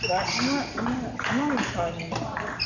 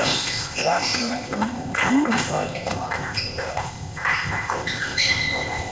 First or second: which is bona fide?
first